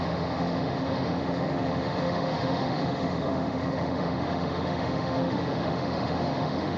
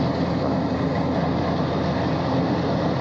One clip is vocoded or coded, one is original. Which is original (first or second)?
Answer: second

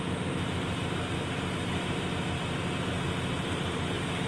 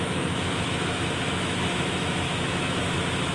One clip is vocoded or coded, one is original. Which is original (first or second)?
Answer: first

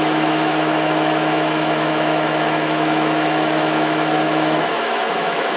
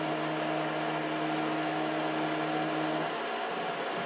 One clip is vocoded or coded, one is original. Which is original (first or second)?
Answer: second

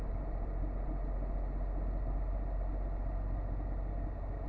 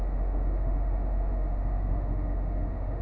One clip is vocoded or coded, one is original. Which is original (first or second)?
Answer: first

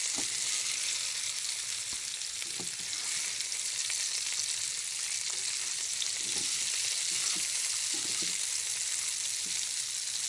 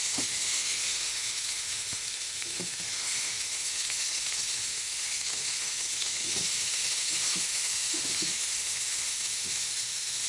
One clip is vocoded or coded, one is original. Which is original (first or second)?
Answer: first